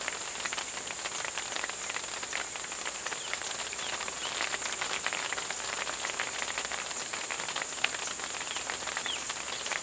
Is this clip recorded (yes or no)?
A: yes